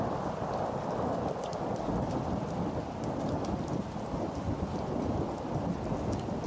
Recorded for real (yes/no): yes